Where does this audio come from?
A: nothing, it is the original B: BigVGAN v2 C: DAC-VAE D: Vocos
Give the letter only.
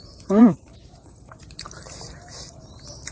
B